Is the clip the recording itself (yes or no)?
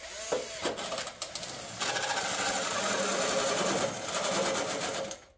yes